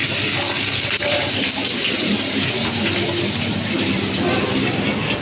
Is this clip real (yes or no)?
yes